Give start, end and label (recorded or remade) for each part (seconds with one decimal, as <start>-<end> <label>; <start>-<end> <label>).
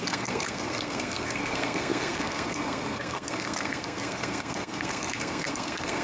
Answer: 0.0-6.0 remade